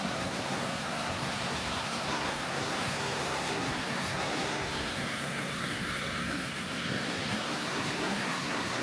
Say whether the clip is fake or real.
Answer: fake